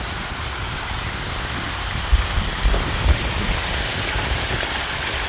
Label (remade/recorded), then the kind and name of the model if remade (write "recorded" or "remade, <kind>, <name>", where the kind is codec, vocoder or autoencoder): recorded